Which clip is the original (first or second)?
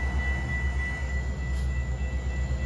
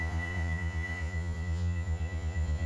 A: first